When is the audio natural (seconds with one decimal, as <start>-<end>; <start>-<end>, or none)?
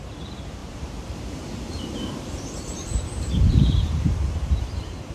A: none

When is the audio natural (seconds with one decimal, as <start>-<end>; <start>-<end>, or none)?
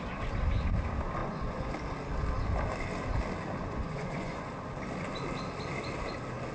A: 0.0-1.2; 1.7-3.6; 4.5-6.5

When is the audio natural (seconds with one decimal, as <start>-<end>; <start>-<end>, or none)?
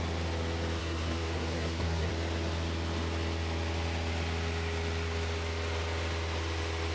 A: 0.0-0.8; 2.1-6.9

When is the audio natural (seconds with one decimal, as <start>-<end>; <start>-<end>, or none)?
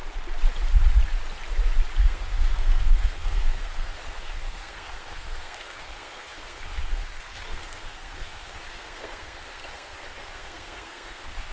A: 0.0-2.0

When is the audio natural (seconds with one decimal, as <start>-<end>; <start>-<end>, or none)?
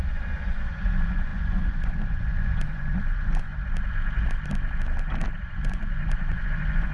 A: 3.5-5.4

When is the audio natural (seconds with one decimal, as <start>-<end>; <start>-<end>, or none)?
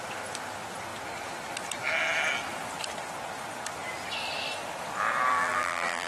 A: 0.0-5.3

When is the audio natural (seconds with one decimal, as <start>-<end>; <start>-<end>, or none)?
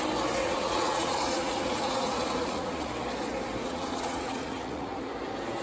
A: 0.0-0.4; 2.9-3.6; 5.0-5.6